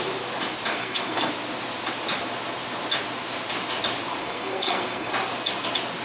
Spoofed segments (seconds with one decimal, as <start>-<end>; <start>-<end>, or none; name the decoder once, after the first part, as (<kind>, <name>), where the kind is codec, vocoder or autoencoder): 0.7-1.3 (codec, SNAC); 4.2-5.1